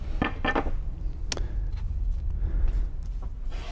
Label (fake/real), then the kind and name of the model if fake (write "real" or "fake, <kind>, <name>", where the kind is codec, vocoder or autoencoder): real